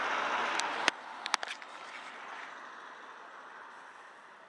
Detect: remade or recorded recorded